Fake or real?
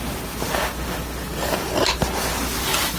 real